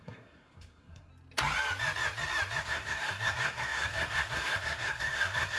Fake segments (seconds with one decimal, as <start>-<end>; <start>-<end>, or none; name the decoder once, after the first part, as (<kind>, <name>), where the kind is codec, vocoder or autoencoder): 0.0-1.1 (codec, SNAC); 2.6-5.6